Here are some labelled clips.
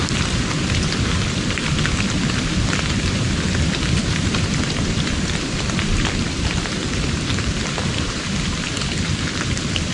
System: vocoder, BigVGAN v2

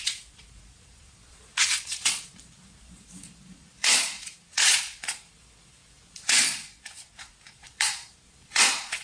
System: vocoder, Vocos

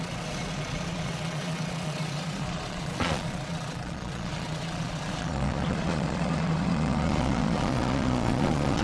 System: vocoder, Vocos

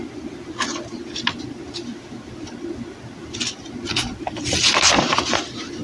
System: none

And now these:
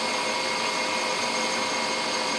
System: vocoder, BigVGAN v2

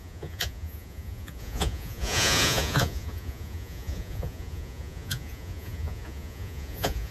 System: vocoder, Vocos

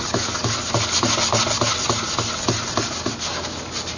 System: none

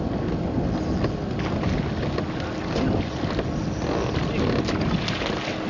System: none